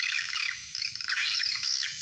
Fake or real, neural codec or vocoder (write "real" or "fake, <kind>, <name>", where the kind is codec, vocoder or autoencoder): fake, autoencoder, DAC-VAE